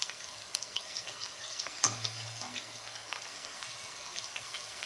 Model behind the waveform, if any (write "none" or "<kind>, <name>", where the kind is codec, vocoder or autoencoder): codec, SNAC